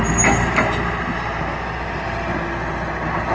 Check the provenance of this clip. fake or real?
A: real